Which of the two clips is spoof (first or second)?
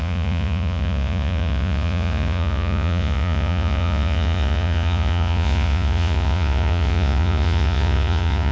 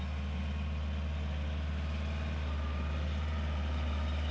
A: first